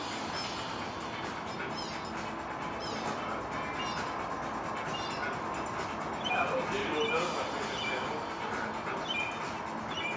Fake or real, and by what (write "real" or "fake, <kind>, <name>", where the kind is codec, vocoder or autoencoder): real